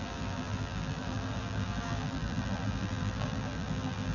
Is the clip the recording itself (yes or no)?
no